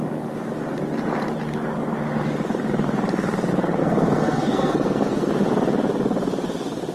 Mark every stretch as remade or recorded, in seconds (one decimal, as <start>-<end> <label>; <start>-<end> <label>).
0.0-3.8 recorded; 3.8-5.3 remade; 5.3-6.9 recorded